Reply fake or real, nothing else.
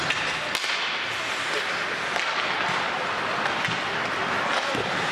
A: real